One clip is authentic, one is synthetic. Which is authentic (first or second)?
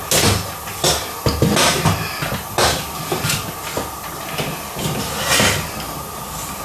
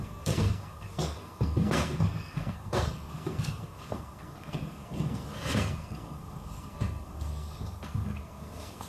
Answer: first